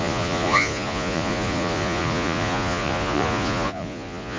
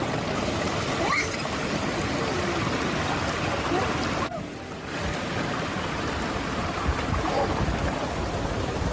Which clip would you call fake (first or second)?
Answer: first